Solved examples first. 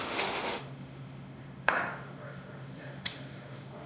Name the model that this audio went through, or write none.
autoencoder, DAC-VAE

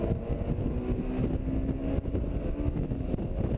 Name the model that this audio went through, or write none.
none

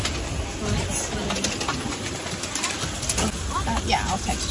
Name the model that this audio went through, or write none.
none